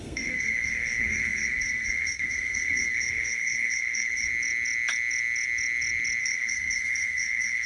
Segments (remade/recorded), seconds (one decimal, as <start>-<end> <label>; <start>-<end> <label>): 0.0-4.3 remade; 4.3-6.2 recorded; 6.2-7.7 remade